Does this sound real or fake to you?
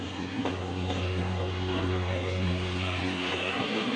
fake